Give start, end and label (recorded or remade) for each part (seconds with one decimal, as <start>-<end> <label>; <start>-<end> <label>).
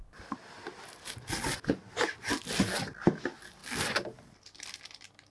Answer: 0.0-5.3 recorded